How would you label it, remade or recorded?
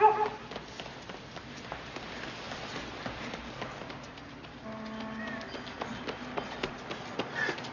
recorded